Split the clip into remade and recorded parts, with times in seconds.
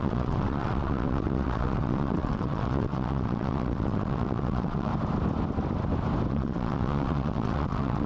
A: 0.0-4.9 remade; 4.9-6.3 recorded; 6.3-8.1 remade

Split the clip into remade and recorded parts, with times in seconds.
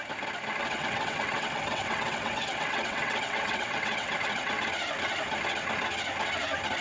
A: 0.0-0.6 recorded; 0.6-4.7 remade; 4.7-6.8 recorded